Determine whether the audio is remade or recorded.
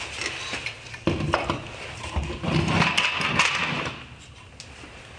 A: recorded